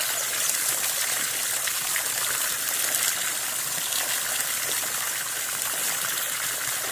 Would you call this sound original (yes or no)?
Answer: yes